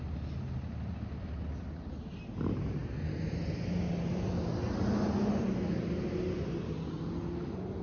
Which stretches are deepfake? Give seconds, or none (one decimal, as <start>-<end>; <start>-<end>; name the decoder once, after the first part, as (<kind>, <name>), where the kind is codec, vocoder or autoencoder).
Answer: none